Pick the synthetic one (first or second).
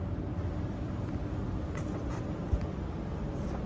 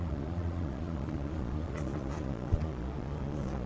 second